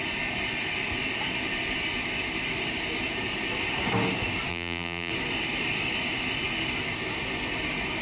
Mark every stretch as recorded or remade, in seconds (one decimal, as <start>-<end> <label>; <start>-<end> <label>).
0.0-4.5 recorded; 4.5-5.1 remade; 5.1-8.0 recorded

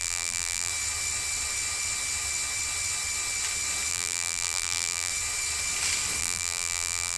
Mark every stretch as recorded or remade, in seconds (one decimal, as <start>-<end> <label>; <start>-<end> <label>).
0.0-0.7 remade; 0.7-3.9 recorded; 3.9-5.1 remade; 5.1-6.2 recorded; 6.2-7.2 remade

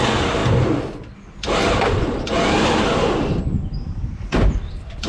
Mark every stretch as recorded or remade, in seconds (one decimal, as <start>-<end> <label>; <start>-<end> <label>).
0.0-5.1 recorded

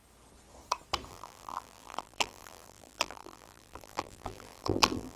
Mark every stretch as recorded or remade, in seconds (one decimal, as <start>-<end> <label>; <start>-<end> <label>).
0.0-1.1 recorded; 1.1-5.2 remade

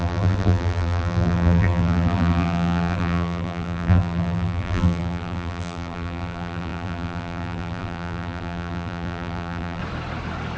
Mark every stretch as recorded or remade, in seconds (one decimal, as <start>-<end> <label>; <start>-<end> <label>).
0.0-9.8 remade; 9.8-10.6 recorded

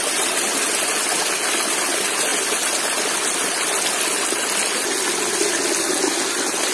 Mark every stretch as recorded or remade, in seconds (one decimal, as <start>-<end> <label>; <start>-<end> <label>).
0.0-6.7 recorded

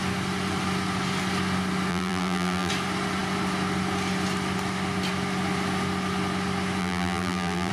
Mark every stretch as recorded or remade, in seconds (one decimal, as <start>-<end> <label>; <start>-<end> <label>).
0.0-1.9 recorded; 1.9-2.7 remade; 2.7-6.8 recorded; 6.8-7.7 remade